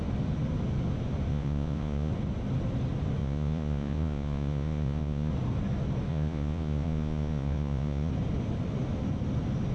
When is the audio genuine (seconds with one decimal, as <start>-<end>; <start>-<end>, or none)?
0.0-1.3; 2.1-3.2; 5.3-6.1; 8.1-9.7